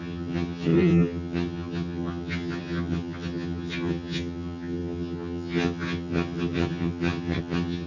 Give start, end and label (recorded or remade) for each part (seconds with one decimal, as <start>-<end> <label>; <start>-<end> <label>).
0.0-7.9 remade